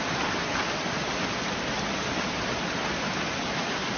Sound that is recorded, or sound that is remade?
remade